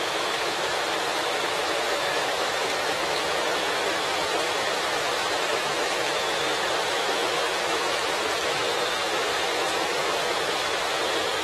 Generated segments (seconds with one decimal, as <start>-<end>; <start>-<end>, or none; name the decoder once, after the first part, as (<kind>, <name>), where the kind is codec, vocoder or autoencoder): 0.0-11.4 (autoencoder, DAC-VAE)